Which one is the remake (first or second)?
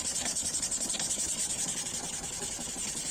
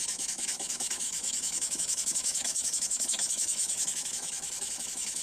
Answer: second